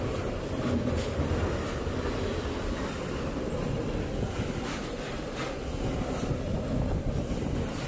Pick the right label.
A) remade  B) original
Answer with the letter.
B